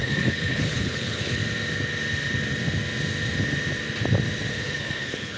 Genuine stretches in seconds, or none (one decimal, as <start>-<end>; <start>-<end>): 1.4-4.5

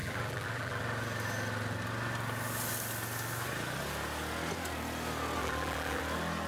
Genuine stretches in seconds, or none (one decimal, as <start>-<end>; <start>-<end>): 0.8-5.4; 6.0-6.5

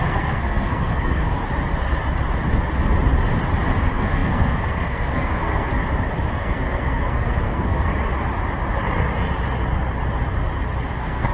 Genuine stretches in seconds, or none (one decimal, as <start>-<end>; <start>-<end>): 1.4-3.8; 5.7-6.3; 7.9-10.9

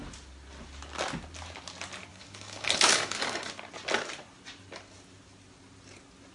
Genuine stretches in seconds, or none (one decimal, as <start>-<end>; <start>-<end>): 0.0-2.1; 3.5-6.3